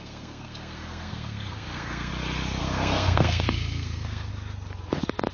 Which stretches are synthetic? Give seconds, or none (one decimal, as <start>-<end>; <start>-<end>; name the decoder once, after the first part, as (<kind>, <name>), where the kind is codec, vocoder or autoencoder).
0.0-2.1 (codec, SNAC); 2.6-4.3